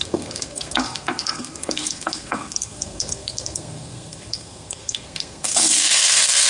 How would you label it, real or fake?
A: fake